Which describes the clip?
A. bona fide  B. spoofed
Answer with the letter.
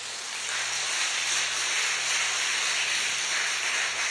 A